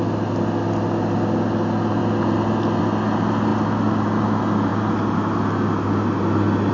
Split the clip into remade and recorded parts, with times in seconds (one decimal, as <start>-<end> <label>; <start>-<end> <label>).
0.0-6.7 recorded